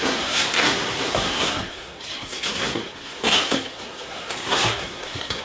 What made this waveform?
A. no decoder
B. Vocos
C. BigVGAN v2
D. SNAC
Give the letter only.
D